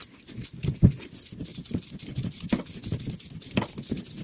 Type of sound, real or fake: real